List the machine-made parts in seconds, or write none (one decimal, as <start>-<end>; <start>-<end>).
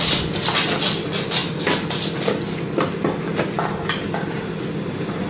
none